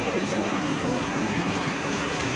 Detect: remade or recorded remade